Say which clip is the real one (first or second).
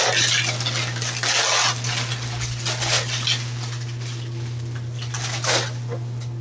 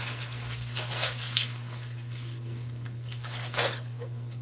first